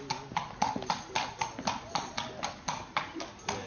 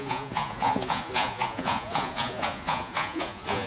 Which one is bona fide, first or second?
first